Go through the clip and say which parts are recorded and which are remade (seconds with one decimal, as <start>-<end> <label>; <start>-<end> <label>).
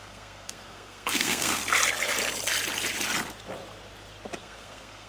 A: 0.0-1.6 remade; 1.6-4.4 recorded; 4.4-5.1 remade